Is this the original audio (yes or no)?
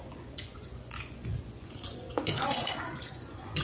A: no